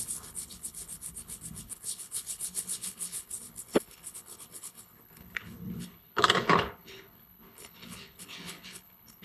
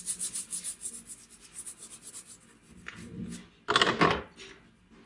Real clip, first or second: second